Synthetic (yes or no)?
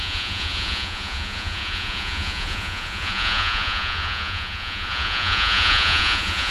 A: yes